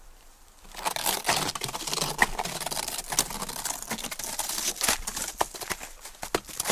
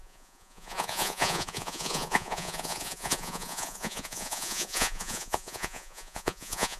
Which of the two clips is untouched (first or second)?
first